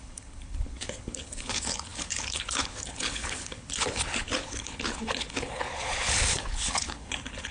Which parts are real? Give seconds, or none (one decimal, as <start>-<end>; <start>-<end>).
none